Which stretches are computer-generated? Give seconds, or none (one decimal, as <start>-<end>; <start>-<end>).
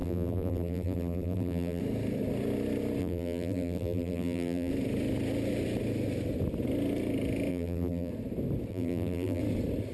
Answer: 0.0-1.8; 3.0-4.7; 7.5-8.1; 8.7-9.4